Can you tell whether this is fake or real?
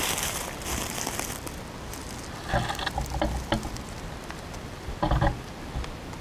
real